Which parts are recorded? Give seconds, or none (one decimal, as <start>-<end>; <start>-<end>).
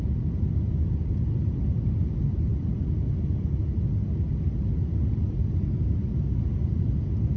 0.0-7.4